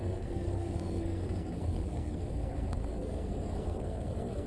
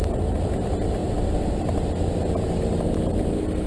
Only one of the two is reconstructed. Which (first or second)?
first